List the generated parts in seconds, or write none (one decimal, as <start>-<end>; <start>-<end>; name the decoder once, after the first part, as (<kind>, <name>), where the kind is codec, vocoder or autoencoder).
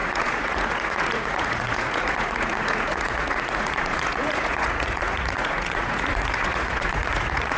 0.0-7.6 (vocoder, Vocos)